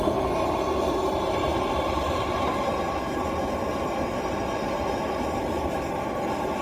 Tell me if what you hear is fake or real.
real